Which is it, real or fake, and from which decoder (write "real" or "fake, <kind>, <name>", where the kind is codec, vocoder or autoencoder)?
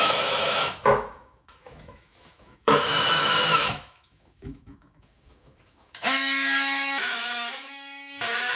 fake, autoencoder, DAC-VAE